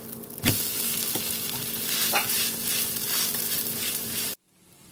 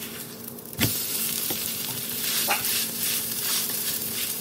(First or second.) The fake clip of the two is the second